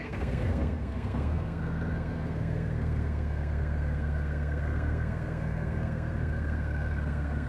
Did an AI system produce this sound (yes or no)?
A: yes